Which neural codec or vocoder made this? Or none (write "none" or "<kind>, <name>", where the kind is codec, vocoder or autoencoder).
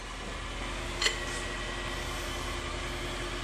none